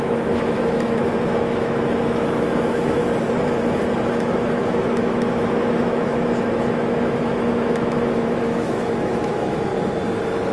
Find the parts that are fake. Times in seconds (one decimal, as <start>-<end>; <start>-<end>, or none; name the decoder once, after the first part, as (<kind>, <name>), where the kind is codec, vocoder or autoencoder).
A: 0.0-3.0 (autoencoder, DAC-VAE); 4.0-9.7